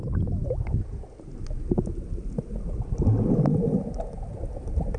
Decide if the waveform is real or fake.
real